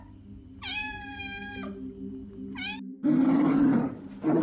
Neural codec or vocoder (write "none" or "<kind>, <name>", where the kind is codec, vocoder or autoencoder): vocoder, BigVGAN v2